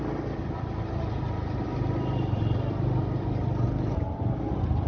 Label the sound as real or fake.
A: real